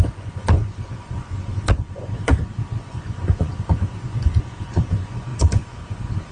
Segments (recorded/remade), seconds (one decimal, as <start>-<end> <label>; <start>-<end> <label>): 0.0-2.3 remade; 2.3-2.8 recorded; 2.8-6.3 remade